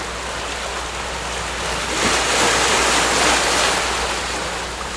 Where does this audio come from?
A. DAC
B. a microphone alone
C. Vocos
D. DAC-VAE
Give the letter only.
B